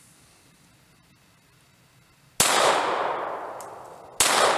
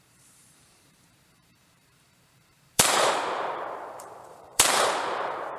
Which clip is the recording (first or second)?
first